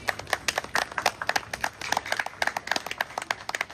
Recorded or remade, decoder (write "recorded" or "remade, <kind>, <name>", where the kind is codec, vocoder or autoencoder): recorded